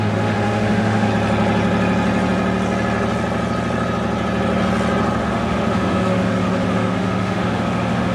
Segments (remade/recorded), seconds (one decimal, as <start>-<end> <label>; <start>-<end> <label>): 0.0-1.1 remade; 1.1-5.2 recorded; 5.2-8.1 remade